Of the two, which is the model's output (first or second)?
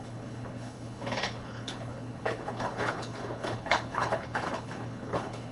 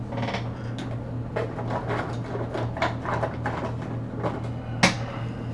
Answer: first